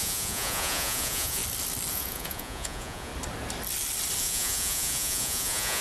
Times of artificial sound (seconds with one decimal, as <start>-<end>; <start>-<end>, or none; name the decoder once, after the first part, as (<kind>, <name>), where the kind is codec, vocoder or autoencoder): 0.0-1.4 (vocoder, Vocos); 1.9-3.1; 4.2-5.8